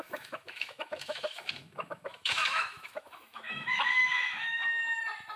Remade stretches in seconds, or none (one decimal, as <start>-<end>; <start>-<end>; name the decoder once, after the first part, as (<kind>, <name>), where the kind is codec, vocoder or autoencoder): 0.0-4.6 (autoencoder, DAC-VAE)